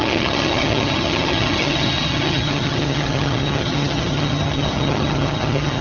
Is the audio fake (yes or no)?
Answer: yes